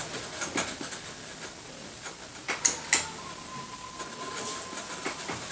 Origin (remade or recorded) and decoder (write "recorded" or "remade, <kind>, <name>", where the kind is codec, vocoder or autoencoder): recorded